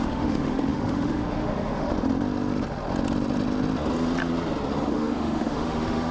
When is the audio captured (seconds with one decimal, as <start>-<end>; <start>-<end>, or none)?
1.9-4.9